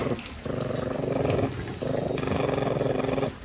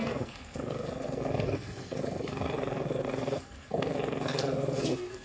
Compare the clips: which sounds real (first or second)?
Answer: first